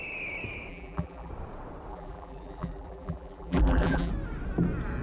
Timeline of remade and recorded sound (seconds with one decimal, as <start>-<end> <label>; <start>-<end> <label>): 0.0-0.7 recorded; 0.7-1.3 remade; 1.3-1.9 recorded; 1.9-4.1 remade; 4.1-5.0 recorded

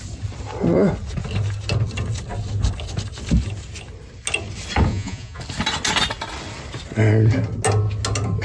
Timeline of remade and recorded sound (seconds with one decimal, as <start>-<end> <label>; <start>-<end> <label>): 0.0-4.9 recorded; 4.9-5.4 remade; 5.4-8.4 recorded

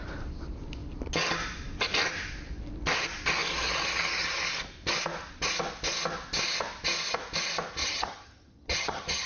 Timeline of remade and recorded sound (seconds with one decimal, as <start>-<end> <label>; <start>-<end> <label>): 0.0-7.8 recorded; 7.8-9.3 remade

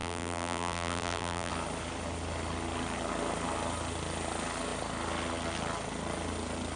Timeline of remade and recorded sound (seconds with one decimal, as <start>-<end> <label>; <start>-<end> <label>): 0.0-1.5 remade; 1.5-6.8 recorded

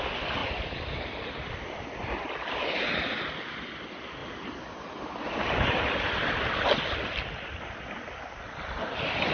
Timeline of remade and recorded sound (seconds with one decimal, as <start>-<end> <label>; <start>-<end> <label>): 0.0-9.3 recorded

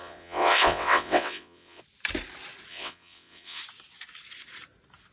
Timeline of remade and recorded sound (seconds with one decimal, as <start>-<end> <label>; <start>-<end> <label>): 0.0-1.8 remade; 1.8-2.7 recorded; 2.7-3.6 remade; 3.6-5.1 recorded